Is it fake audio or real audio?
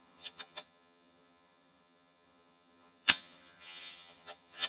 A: fake